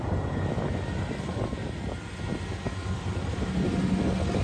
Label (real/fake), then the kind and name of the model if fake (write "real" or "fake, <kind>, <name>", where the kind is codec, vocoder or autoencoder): real